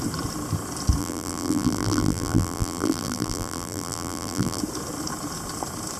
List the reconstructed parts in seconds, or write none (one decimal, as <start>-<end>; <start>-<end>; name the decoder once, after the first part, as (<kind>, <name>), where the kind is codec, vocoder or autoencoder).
1.0-4.6 (vocoder, BigVGAN v2)